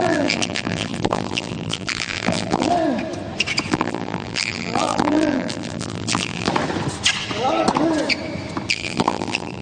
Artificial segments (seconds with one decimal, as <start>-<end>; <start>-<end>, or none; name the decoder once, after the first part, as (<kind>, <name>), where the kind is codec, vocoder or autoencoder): 0.0-2.7 (vocoder, BigVGAN v2); 3.7-6.5; 8.7-9.6

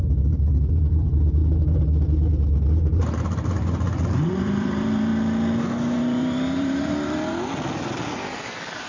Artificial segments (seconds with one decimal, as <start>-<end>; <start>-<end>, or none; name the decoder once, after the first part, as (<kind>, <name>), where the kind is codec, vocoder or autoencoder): 0.0-1.4 (vocoder, BigVGAN v2); 4.3-5.1; 6.0-7.3; 8.1-8.9

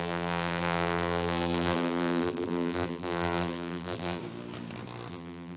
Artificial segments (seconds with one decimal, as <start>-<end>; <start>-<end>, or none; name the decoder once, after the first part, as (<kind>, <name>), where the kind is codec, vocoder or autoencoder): 0.0-4.2 (vocoder, BigVGAN v2); 5.1-5.6